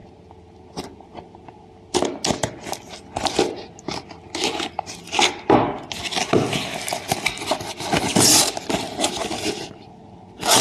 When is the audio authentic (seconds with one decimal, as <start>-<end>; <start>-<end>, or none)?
0.0-10.6